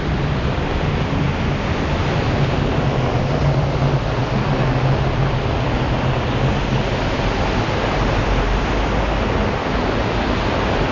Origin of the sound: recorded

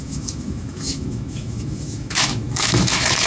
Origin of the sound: remade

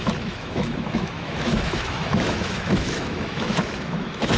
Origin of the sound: remade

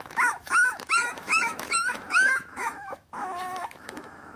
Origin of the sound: remade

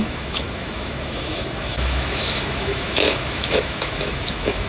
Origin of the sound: remade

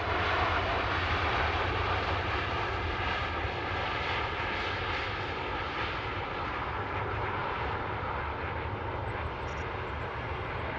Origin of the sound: recorded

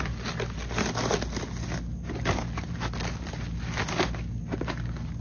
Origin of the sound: recorded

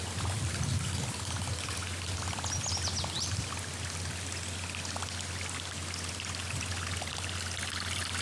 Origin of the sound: recorded